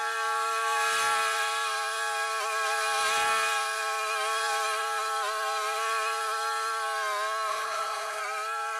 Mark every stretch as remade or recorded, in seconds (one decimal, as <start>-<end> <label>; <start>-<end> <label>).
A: 0.0-7.5 recorded; 7.5-8.2 remade; 8.2-8.8 recorded